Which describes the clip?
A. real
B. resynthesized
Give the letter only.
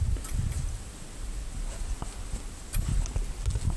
A